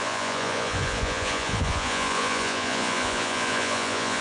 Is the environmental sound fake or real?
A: fake